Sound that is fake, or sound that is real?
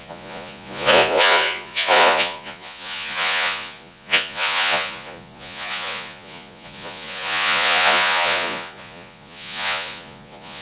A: fake